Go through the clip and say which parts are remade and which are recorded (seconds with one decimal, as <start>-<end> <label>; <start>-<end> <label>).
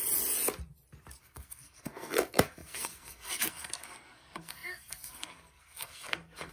0.0-1.2 recorded; 1.2-6.5 remade